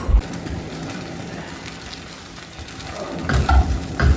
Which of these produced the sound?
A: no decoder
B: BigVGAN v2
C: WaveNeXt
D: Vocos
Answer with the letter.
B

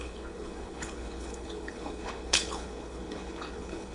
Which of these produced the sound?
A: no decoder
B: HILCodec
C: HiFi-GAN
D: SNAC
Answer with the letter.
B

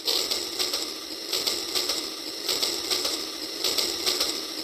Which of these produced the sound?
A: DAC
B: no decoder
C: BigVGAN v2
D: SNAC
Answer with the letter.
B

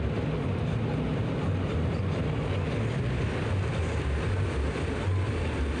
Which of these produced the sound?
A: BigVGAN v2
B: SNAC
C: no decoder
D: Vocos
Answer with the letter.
C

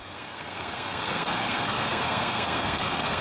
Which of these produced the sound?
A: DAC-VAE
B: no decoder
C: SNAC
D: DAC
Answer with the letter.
C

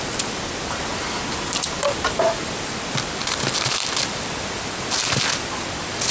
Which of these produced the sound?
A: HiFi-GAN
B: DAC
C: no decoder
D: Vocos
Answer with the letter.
C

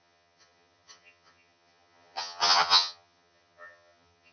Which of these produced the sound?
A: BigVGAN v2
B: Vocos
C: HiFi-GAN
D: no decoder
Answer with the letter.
C